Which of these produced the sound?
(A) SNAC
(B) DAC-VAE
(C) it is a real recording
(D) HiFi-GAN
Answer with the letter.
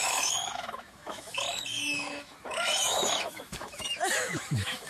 B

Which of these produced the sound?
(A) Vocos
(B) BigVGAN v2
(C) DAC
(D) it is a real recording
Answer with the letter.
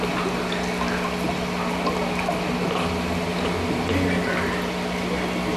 D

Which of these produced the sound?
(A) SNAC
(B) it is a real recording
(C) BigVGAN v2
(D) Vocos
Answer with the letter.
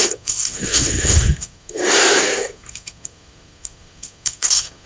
A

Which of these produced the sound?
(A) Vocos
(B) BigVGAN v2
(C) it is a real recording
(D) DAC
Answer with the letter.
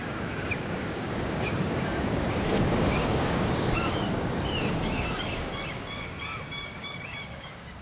D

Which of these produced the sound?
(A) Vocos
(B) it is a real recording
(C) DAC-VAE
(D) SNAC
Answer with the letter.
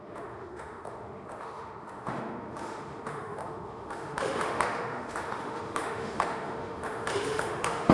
C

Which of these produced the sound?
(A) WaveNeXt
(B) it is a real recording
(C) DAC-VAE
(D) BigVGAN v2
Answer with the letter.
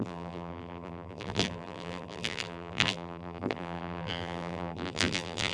D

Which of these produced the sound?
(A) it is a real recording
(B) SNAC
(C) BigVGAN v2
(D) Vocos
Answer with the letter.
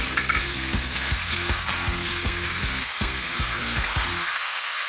B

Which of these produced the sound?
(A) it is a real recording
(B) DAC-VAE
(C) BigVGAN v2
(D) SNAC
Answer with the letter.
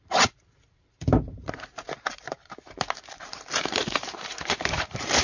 C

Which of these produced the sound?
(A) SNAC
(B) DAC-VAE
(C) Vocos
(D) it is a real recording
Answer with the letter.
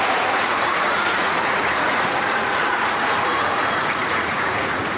C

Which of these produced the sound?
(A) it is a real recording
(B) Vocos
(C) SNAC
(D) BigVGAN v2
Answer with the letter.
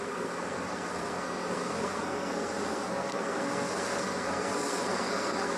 C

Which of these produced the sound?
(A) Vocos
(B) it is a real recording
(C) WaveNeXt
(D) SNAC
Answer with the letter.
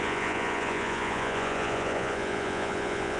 A